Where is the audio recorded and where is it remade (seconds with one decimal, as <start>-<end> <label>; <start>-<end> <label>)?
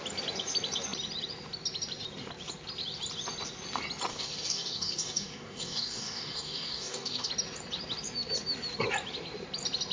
0.0-4.1 recorded; 4.1-7.3 remade; 7.3-9.9 recorded